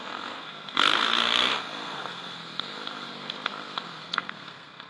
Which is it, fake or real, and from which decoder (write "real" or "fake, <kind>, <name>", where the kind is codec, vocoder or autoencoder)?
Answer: fake, codec, SNAC